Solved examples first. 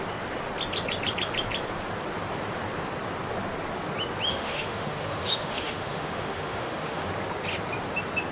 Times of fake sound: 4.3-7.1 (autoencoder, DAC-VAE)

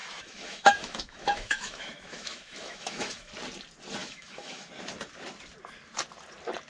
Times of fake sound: 0.0-3.3 (autoencoder, DAC-VAE); 4.0-4.7

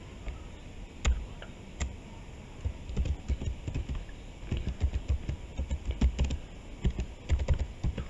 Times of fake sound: none

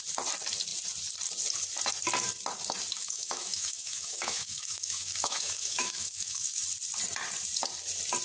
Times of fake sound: 3.0-6.6 (autoencoder, DAC-VAE)

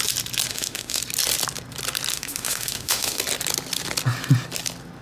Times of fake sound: 0.5-1.0 (autoencoder, DAC-VAE); 2.1-3.2